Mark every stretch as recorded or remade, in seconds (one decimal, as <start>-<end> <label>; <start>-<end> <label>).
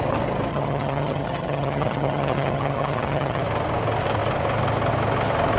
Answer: 0.0-0.5 recorded; 0.5-3.4 remade; 3.4-5.6 recorded